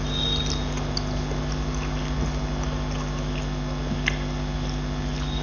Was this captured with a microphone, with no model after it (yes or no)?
yes